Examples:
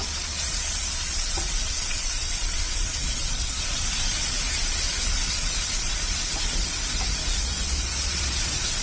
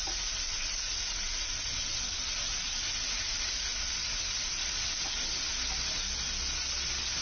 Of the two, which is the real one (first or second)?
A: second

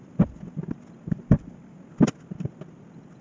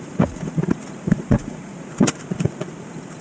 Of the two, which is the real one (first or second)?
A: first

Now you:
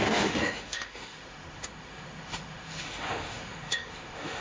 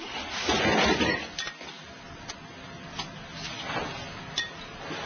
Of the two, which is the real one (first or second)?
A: second